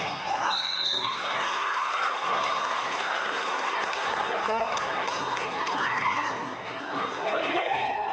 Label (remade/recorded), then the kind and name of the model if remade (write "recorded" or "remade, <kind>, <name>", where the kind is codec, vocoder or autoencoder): remade, codec, SNAC